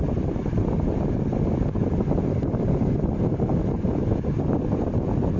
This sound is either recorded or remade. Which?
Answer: recorded